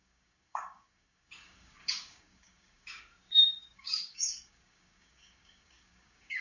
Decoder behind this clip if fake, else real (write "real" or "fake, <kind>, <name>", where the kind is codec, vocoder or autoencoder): fake, codec, DAC